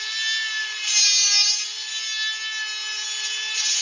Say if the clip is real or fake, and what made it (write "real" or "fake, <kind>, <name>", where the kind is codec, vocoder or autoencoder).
real